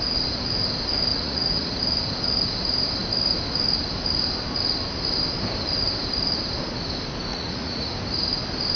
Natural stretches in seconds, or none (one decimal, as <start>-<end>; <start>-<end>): 0.0-1.1; 1.8-7.3; 7.9-8.8